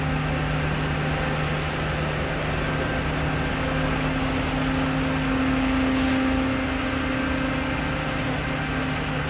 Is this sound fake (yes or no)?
no